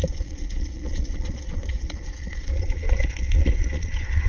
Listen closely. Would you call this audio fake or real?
fake